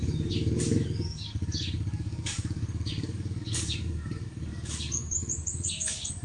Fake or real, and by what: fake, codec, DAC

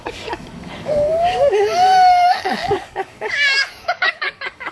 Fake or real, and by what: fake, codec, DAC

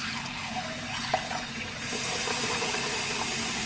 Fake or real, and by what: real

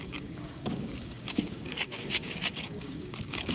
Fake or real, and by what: fake, codec, DAC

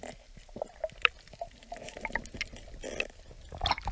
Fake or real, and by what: real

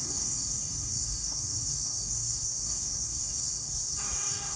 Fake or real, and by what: fake, codec, DAC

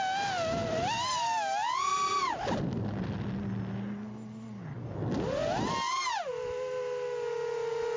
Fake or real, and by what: real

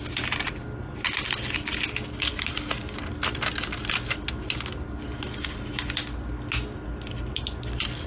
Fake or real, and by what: real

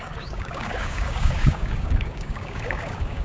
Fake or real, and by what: fake, codec, DAC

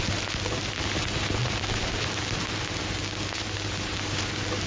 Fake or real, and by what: real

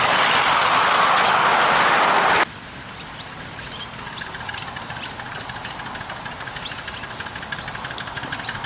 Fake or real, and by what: real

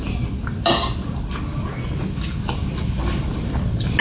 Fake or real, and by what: real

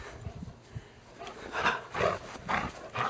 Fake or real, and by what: real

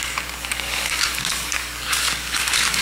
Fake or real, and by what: fake, codec, DAC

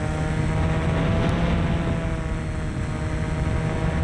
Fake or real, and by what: real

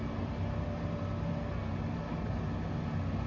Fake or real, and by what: real